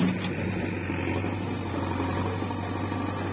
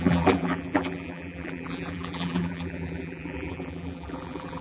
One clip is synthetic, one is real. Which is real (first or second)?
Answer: first